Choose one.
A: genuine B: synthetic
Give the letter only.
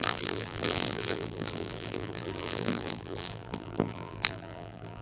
B